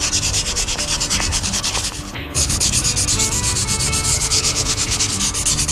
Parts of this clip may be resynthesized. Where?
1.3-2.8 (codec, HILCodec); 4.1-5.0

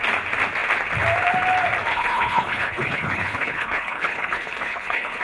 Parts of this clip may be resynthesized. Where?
1.9-5.2 (codec, HILCodec)

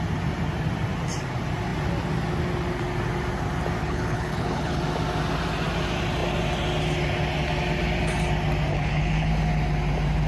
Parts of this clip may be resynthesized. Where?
3.8-4.8 (codec, HILCodec); 8.7-9.3

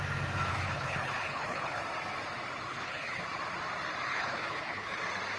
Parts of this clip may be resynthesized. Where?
0.5-1.8 (codec, HILCodec); 2.7-3.2; 4.1-5.0

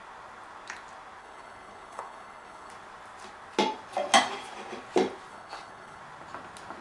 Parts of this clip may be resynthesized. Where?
1.2-2.7 (codec, HILCodec); 5.3-6.0